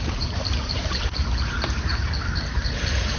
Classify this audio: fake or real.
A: fake